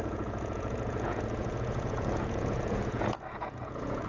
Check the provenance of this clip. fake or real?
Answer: fake